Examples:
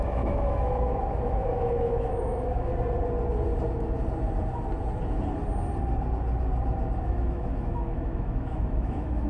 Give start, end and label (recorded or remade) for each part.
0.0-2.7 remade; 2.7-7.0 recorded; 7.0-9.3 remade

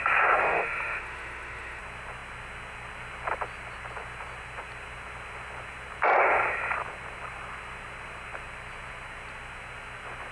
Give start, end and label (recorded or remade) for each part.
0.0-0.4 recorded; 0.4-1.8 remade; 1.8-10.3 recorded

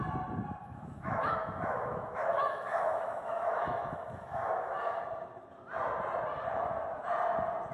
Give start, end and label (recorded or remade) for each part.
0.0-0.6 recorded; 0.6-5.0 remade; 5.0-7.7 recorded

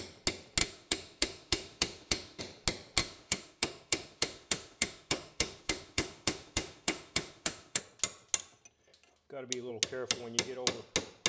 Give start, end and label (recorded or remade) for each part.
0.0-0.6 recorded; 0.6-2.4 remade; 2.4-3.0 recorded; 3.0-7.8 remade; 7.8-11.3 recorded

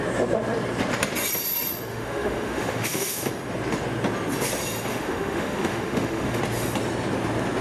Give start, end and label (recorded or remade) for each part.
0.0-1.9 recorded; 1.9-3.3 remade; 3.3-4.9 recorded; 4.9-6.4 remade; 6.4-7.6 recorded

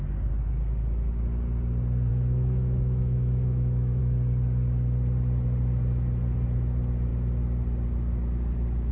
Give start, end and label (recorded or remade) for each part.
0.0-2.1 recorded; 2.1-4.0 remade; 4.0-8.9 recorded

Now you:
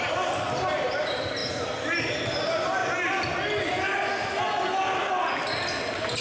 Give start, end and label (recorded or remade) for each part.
0.0-6.2 recorded

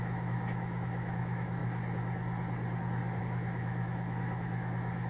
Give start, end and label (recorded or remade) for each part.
0.0-1.6 remade; 1.6-3.2 recorded; 3.2-5.1 remade